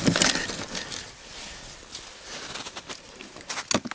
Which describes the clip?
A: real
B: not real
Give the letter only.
A